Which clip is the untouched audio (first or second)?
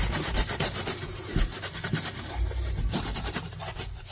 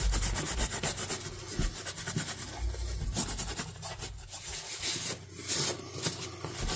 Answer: second